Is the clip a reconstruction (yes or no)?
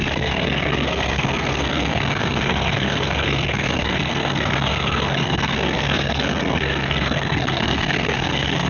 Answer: yes